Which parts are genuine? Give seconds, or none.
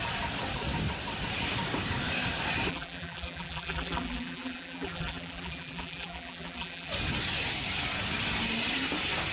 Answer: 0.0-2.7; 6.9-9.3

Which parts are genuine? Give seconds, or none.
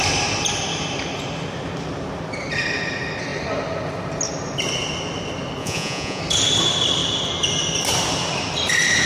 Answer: 0.0-5.6; 6.2-9.1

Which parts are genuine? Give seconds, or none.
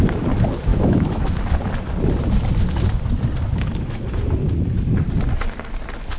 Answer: 0.0-0.7; 1.4-6.2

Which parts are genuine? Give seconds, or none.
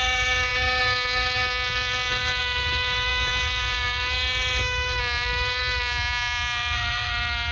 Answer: none